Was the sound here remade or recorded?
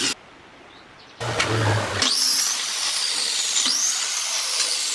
recorded